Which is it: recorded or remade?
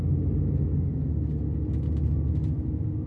recorded